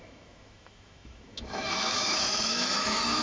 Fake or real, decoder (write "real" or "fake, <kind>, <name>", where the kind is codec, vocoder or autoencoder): fake, autoencoder, DAC-VAE